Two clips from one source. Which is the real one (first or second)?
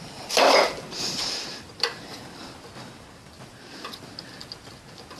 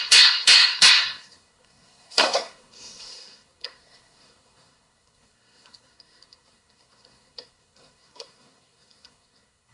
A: first